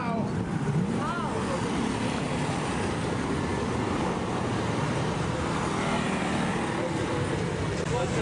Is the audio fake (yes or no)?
yes